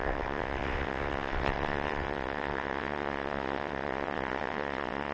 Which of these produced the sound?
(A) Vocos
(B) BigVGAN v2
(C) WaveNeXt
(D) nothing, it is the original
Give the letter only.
C